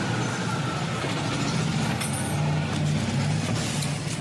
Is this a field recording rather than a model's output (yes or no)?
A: yes